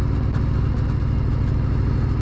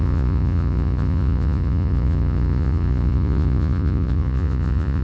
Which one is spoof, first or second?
second